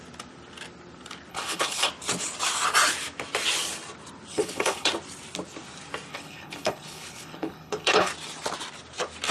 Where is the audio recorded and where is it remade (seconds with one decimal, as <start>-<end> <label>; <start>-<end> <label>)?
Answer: 0.0-1.3 recorded; 1.3-1.9 remade; 1.9-4.3 recorded; 4.3-4.9 remade; 4.9-6.1 recorded; 6.1-8.1 remade; 8.1-9.3 recorded